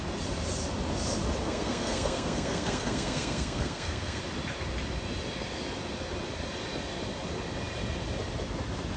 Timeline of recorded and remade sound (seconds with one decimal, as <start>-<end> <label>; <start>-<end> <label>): 0.0-1.4 recorded; 1.4-4.2 remade; 4.2-9.0 recorded